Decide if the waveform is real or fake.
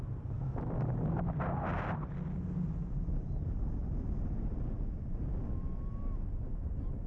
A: real